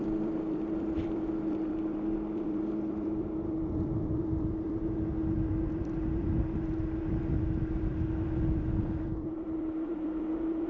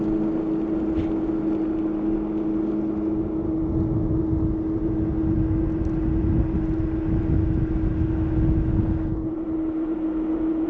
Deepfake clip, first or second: first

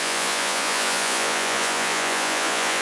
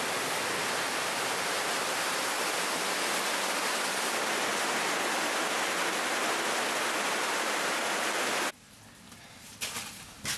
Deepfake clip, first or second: first